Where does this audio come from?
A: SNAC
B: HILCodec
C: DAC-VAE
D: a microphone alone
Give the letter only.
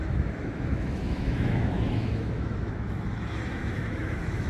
C